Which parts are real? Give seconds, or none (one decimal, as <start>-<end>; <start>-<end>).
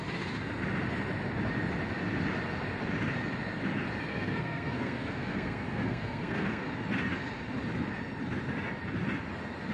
0.0-4.1; 6.7-9.7